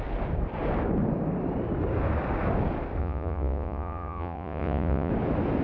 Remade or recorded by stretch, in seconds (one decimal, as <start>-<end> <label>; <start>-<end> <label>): 0.0-3.0 recorded; 3.0-5.1 remade; 5.1-5.6 recorded